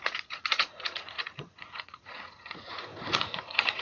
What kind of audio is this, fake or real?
fake